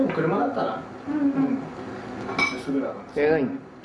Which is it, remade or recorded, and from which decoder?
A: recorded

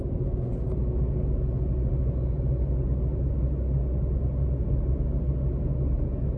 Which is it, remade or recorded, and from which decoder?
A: recorded